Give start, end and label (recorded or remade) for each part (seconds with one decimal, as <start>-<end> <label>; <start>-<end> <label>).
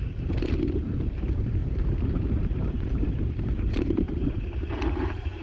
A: 0.0-1.6 recorded; 1.6-4.8 remade; 4.8-5.4 recorded